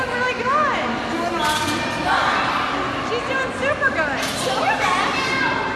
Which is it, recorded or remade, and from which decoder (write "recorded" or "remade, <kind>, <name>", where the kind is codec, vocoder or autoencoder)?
recorded